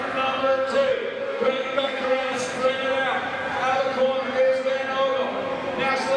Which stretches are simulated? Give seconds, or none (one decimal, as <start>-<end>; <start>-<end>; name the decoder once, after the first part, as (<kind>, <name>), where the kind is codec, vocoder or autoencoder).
0.4-2.7 (codec, SNAC)